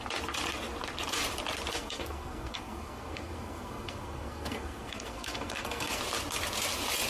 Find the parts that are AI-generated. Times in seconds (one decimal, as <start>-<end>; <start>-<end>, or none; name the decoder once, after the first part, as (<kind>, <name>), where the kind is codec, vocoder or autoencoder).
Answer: 1.7-6.0 (codec, SNAC)